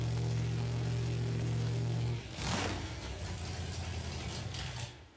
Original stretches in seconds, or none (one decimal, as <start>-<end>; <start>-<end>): 3.1-4.4